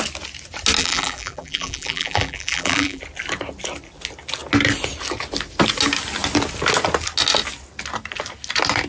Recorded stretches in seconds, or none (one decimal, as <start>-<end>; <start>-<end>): 0.0-0.8; 3.0-8.9